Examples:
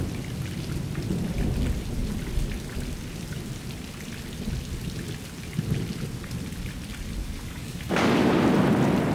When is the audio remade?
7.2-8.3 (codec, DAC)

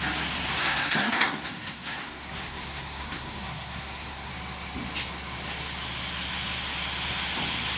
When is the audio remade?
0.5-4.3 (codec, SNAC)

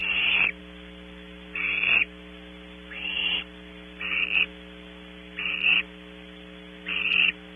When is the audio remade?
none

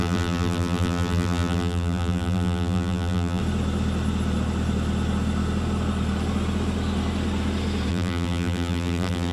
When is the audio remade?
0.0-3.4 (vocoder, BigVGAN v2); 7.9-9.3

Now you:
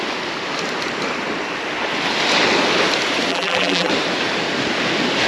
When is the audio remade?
3.3-3.9 (vocoder, BigVGAN v2)

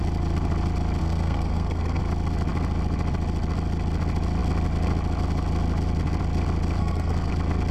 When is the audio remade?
1.0-2.0 (codec, SNAC); 6.8-7.3

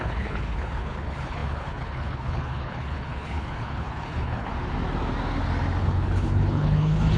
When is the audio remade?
0.0-4.5 (codec, HILCodec); 5.8-7.2